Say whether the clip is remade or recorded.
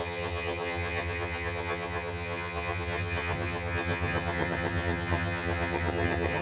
remade